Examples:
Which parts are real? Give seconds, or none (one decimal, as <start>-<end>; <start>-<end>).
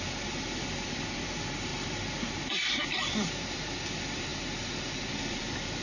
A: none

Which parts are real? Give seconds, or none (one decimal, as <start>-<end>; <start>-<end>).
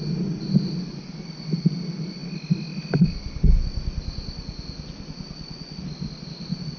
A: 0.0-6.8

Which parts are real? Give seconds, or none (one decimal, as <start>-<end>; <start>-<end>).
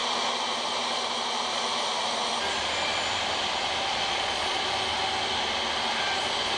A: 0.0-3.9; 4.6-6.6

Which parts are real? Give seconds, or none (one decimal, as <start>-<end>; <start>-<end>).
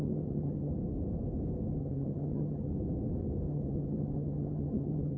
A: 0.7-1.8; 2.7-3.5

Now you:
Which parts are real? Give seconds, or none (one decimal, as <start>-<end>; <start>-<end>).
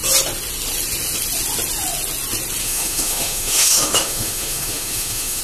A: 0.0-2.6